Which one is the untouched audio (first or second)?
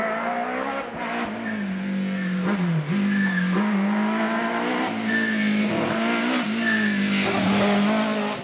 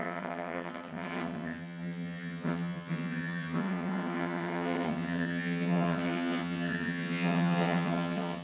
first